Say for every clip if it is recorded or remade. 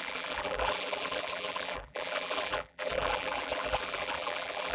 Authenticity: remade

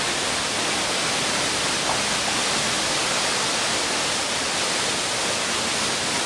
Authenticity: recorded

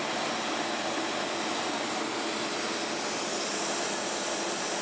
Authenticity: recorded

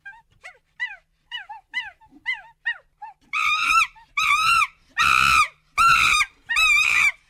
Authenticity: remade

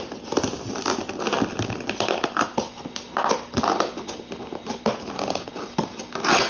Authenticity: recorded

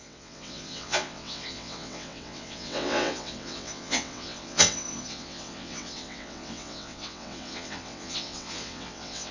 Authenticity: remade